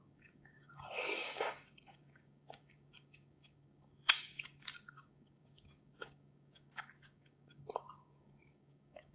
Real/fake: fake